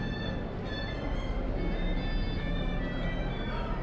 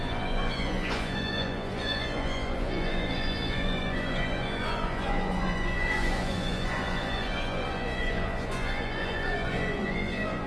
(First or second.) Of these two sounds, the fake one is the second